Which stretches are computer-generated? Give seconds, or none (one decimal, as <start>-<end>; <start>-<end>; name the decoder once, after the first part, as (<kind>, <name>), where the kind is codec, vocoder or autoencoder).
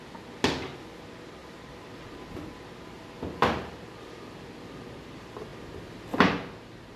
none